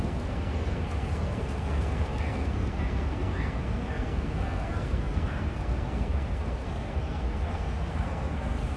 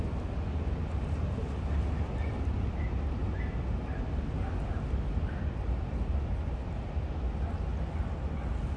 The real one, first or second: second